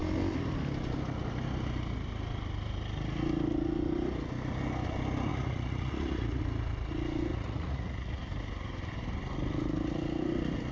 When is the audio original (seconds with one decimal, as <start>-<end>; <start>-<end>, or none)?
0.0-5.3; 6.4-7.3; 8.2-10.7